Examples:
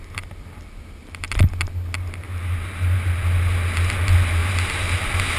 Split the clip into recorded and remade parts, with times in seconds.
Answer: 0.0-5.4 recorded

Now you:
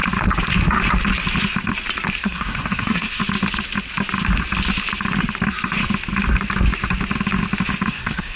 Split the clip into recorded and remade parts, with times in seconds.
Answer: 0.0-2.2 recorded; 2.2-3.2 remade; 3.2-7.9 recorded; 7.9-8.4 remade

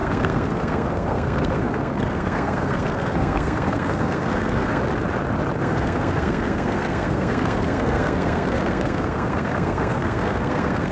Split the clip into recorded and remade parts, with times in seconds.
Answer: 0.0-4.8 remade; 4.8-5.6 recorded; 5.6-10.9 remade

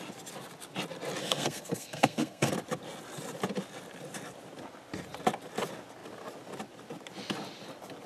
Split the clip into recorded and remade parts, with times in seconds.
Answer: 0.0-1.2 recorded; 1.2-2.5 remade; 2.5-8.1 recorded

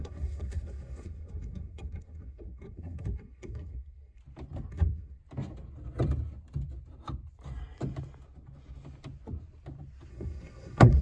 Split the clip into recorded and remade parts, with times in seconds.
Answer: 0.0-4.2 remade; 4.2-4.7 recorded; 4.7-5.2 remade; 5.2-10.1 recorded; 10.1-11.0 remade

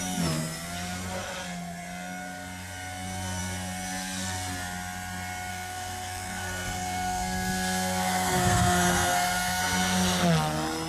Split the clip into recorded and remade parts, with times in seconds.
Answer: 0.0-5.5 recorded; 5.5-9.6 remade; 9.6-10.9 recorded

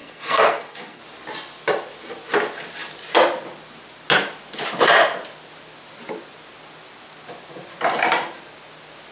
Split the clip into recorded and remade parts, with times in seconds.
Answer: 0.0-1.0 remade; 1.0-9.1 recorded